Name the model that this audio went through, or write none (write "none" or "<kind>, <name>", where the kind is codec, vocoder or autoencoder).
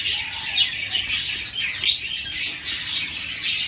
none